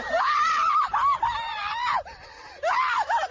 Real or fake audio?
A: real